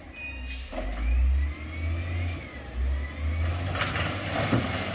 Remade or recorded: recorded